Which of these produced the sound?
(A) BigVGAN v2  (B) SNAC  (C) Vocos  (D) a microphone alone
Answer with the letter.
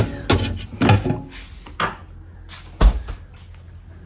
D